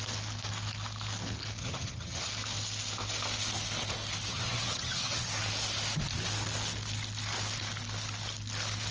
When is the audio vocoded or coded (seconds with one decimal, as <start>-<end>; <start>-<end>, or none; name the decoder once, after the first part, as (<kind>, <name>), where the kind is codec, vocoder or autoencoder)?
1.6-2.3 (vocoder, HiFi-GAN); 4.3-5.3